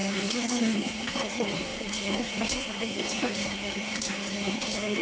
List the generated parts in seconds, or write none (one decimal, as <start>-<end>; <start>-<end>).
0.0-5.0